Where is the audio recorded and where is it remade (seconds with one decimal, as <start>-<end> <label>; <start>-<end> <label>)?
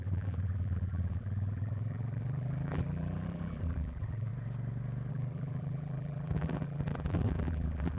0.0-4.3 remade; 4.3-5.1 recorded; 5.1-8.0 remade